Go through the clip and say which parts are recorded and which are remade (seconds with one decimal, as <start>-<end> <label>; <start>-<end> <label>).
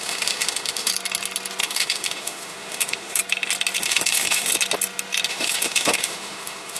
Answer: 0.0-0.9 remade; 0.9-1.6 recorded; 1.6-3.2 remade; 3.2-3.8 recorded; 3.8-4.5 remade; 4.5-5.3 recorded; 5.3-6.8 remade